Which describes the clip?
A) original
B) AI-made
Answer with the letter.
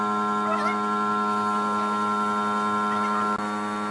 A